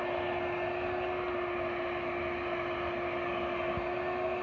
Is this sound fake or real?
real